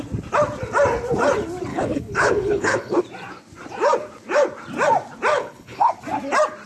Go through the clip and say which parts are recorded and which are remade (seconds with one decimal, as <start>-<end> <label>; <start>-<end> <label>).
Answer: 0.0-1.7 recorded; 1.7-3.0 remade; 3.0-5.3 recorded; 5.3-5.9 remade; 5.9-6.7 recorded